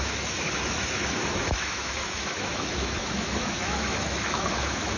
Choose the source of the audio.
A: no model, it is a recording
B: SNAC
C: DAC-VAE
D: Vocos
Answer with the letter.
C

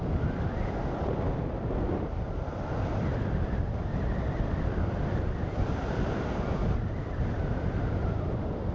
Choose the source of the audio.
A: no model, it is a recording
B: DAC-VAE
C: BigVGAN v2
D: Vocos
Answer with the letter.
A